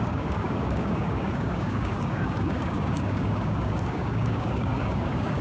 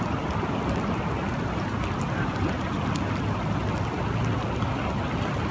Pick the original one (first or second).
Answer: second